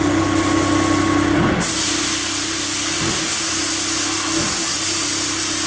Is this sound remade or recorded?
recorded